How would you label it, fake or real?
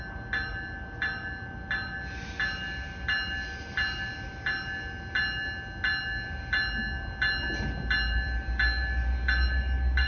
real